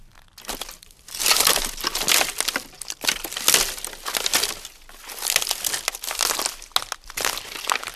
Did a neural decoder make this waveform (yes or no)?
no